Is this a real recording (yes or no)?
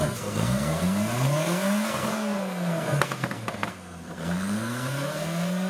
no